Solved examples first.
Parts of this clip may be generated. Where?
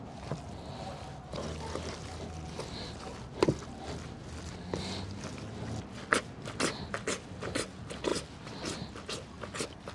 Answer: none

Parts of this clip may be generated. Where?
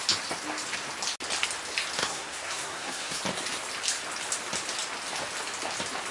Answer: 2.0-3.2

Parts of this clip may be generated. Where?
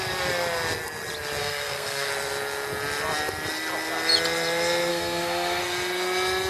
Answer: 1.4-2.1; 4.9-5.6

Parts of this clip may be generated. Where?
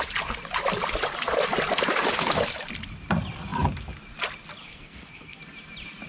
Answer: 4.6-5.4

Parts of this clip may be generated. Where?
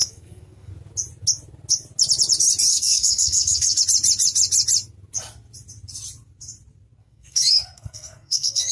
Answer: 0.0-0.7; 2.7-3.8; 7.0-8.7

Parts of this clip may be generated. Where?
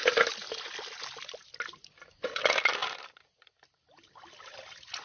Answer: none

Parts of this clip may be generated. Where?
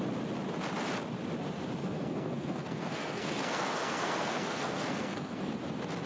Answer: 1.8-5.5